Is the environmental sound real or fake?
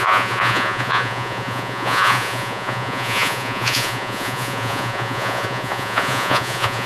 fake